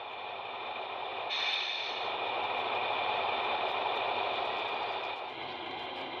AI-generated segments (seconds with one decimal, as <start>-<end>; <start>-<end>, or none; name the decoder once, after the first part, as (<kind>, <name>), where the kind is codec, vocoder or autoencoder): none